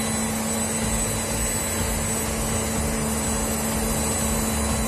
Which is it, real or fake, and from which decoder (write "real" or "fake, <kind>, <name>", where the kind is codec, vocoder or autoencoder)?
real